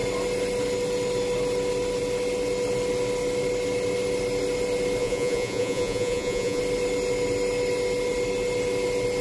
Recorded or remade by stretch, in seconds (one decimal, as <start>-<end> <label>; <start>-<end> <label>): 0.0-5.0 recorded; 5.0-6.6 remade; 6.6-9.2 recorded